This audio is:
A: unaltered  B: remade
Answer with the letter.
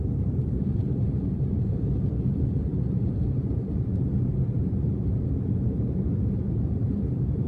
B